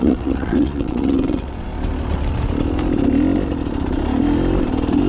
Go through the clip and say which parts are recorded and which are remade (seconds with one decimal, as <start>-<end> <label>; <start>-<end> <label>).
0.0-1.7 remade; 1.7-5.1 recorded